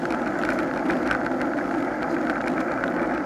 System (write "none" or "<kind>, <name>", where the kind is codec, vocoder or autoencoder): none